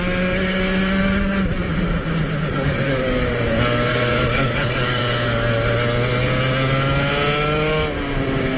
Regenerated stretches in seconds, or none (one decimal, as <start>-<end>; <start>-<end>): 2.2-3.3; 3.9-5.0